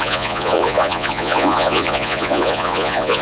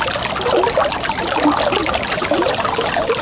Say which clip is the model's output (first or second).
first